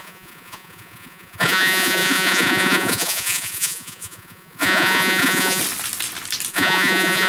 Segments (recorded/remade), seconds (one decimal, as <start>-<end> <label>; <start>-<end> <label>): 0.0-5.6 remade; 5.6-6.5 recorded; 6.5-7.3 remade